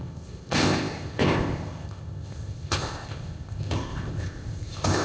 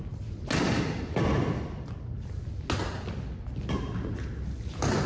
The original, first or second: second